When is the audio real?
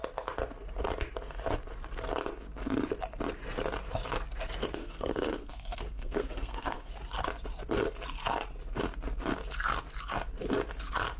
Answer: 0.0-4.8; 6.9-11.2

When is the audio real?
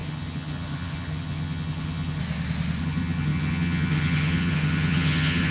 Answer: 2.2-2.8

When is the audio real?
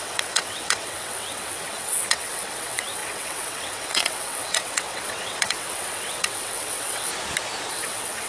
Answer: 7.1-7.7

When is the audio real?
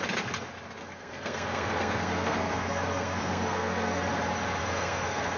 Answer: 0.0-0.8; 4.0-4.6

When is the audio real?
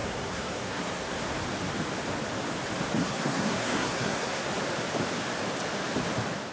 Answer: 1.3-3.0; 4.5-6.5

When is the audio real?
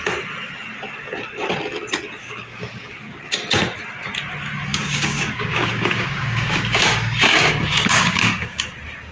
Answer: 0.0-2.2; 3.2-4.7; 8.7-9.1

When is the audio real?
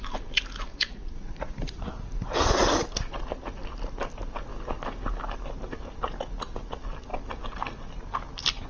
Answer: 0.0-0.7; 1.9-8.7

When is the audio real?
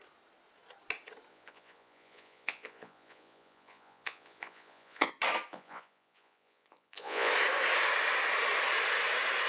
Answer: 0.0-1.3; 5.1-5.5; 7.3-9.5